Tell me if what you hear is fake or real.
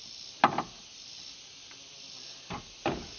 real